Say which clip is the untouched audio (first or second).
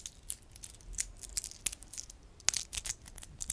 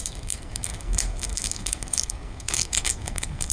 first